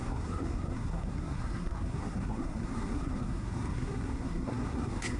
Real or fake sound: fake